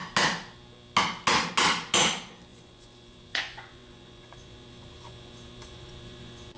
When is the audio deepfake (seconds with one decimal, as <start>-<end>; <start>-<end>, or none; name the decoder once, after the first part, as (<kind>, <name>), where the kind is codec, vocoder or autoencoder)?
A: 2.5-6.6 (vocoder, Vocos)